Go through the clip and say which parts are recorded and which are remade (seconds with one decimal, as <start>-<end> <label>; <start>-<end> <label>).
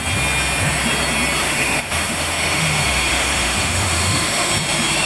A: 0.0-1.4 recorded; 1.4-4.5 remade; 4.5-5.1 recorded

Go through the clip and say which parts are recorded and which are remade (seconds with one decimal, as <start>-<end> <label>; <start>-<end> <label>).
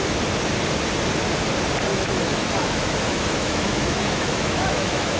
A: 0.0-1.9 recorded; 1.9-5.2 remade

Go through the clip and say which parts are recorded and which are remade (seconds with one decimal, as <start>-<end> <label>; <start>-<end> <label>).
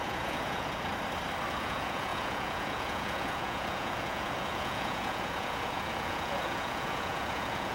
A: 0.0-0.9 remade; 0.9-1.5 recorded; 1.5-7.7 remade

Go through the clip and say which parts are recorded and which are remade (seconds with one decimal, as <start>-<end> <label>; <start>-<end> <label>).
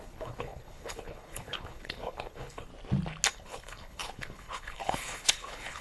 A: 0.0-2.7 remade; 2.7-3.3 recorded; 3.3-5.8 remade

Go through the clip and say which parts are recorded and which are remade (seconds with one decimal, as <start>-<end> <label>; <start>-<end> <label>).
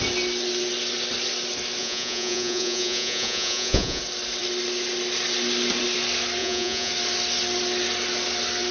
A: 0.0-1.8 recorded; 1.8-4.0 remade; 4.0-6.4 recorded; 6.4-6.9 remade; 6.9-8.7 recorded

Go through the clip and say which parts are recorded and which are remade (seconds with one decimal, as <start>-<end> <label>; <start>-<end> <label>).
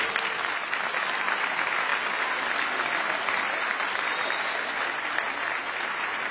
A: 0.0-6.3 recorded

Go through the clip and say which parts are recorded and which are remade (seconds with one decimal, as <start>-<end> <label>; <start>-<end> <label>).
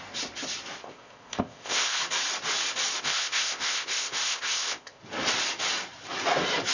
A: 0.0-0.8 recorded; 0.8-2.0 remade; 2.0-3.0 recorded; 3.0-5.0 remade; 5.0-6.7 recorded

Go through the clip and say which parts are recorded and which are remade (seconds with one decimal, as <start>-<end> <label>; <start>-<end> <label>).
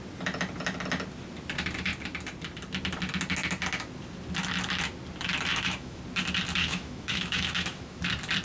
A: 0.0-5.5 recorded; 5.5-6.0 remade; 6.0-6.6 recorded; 6.6-8.0 remade; 8.0-8.4 recorded